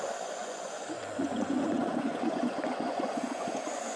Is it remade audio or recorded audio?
remade